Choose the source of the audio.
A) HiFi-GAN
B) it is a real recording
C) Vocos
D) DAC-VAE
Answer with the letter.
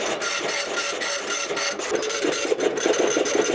B